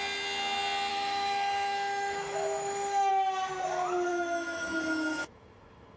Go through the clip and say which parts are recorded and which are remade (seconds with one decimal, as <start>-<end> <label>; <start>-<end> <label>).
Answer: 0.0-0.9 recorded; 0.9-3.1 remade; 3.1-4.1 recorded; 4.1-6.0 remade